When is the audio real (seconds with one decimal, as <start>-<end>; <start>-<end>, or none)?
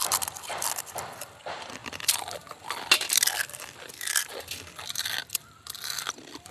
none